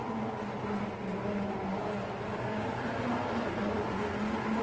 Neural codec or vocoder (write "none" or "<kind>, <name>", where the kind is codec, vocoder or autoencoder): none